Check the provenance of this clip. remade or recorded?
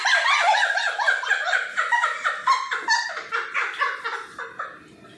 recorded